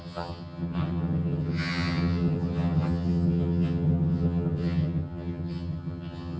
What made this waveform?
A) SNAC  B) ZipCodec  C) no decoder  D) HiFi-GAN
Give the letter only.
D